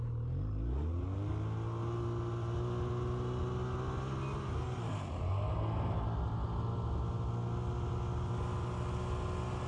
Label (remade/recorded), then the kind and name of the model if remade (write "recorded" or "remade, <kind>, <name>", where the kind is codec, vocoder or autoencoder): recorded